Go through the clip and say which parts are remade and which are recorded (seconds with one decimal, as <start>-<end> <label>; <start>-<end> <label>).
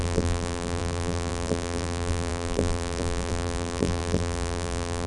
0.0-5.1 remade